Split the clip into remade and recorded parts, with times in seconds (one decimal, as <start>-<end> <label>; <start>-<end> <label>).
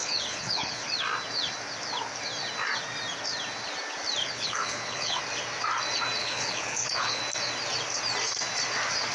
0.0-0.9 remade; 0.9-4.2 recorded; 4.2-5.2 remade; 5.2-6.2 recorded; 6.2-7.2 remade; 7.2-9.1 recorded